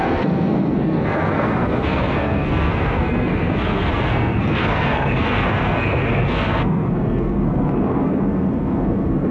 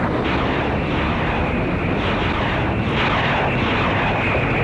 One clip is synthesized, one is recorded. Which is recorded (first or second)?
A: second